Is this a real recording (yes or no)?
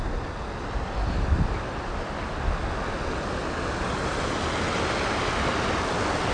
yes